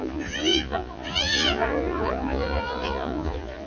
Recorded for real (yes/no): no